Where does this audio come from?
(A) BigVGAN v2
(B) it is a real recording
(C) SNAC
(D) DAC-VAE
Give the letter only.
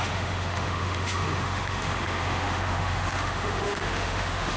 D